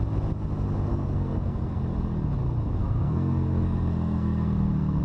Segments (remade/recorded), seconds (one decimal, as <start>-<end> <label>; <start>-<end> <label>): 0.0-0.9 recorded; 0.9-1.8 remade; 1.8-2.8 recorded; 2.8-5.0 remade